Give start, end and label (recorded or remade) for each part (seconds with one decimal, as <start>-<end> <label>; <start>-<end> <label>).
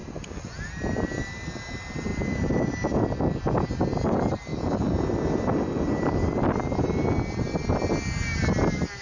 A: 0.0-9.0 recorded